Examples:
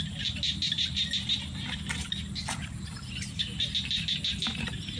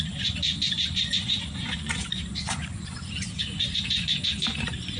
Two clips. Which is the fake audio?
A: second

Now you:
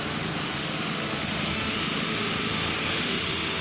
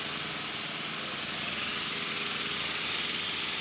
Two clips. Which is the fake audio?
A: first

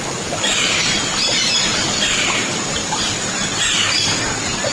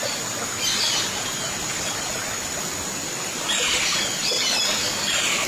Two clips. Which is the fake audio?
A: first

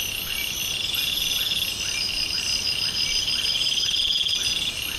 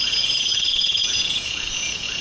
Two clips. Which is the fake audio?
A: second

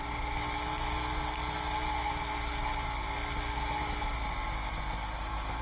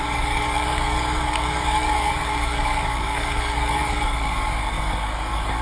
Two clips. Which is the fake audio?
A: second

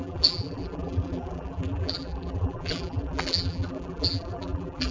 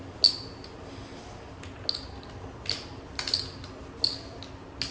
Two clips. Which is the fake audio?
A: first